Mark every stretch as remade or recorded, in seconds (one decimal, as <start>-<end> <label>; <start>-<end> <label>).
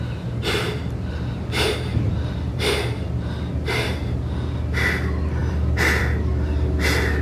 0.0-1.9 recorded; 1.9-3.1 remade; 3.1-5.4 recorded; 5.4-6.0 remade; 6.0-7.2 recorded